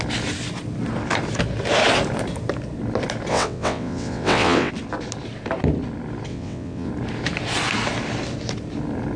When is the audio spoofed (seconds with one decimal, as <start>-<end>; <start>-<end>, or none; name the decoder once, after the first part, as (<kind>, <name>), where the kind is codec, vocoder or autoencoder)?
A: 3.3-4.7 (vocoder, WaveNeXt); 6.3-6.9